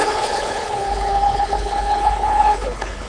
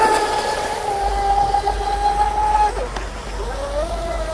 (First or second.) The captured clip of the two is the second